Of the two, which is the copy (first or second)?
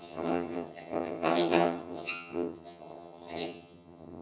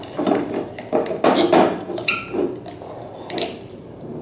first